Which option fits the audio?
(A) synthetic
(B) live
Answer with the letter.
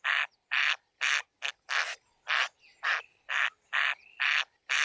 B